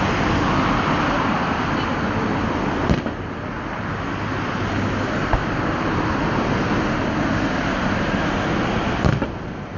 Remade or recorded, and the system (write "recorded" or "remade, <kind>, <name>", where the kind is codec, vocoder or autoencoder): recorded